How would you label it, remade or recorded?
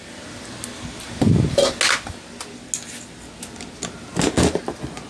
recorded